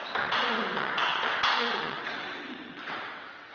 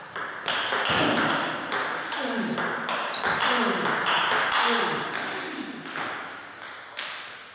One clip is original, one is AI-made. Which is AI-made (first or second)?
first